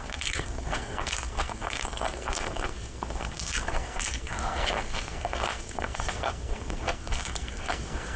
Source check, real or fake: fake